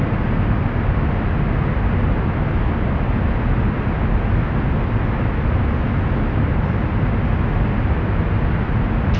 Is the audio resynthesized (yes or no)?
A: no